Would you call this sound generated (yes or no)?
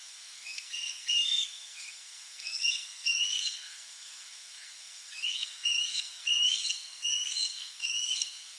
yes